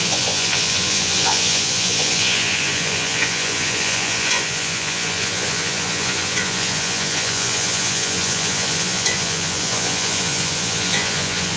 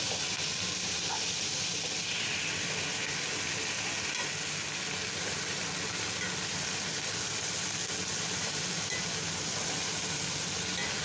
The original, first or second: second